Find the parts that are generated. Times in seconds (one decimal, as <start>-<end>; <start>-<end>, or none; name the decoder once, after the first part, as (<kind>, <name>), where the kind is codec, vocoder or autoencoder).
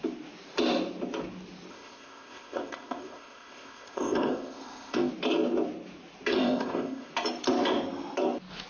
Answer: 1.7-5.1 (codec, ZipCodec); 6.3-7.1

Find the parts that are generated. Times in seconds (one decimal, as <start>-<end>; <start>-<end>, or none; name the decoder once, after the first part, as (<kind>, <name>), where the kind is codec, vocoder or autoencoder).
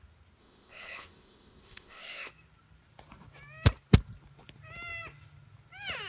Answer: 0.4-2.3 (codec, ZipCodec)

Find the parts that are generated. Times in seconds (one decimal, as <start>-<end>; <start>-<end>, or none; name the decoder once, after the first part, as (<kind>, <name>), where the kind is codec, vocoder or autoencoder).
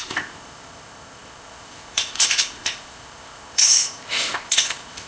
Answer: 0.0-5.1 (codec, ZipCodec)